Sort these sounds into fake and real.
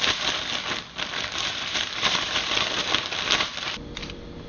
real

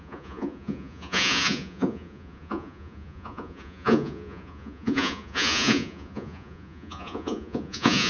fake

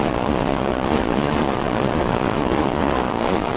fake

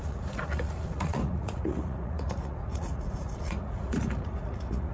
fake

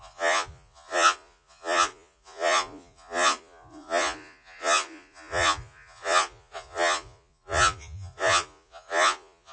fake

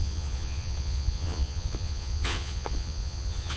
fake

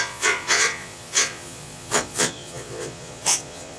fake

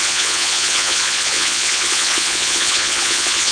fake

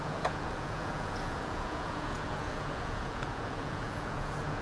fake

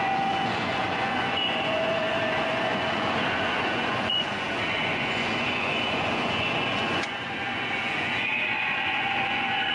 fake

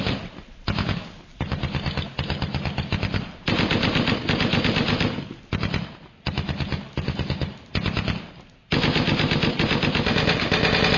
real